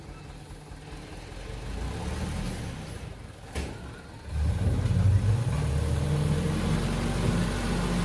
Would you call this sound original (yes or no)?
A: yes